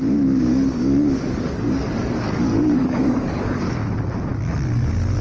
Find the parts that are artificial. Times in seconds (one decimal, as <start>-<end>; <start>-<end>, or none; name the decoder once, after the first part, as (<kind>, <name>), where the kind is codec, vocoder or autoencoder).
0.5-3.6 (codec, DAC)